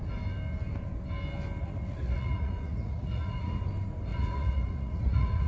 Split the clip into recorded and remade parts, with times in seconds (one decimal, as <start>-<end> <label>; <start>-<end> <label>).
0.0-1.6 recorded; 1.6-3.6 remade; 3.6-4.1 recorded; 4.1-5.5 remade